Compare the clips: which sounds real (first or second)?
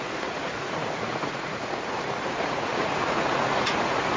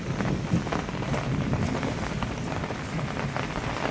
second